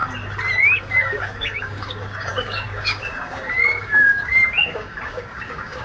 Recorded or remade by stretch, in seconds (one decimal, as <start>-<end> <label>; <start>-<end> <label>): 0.0-0.8 recorded; 0.8-5.8 remade